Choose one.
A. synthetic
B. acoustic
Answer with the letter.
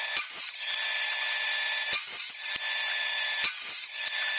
B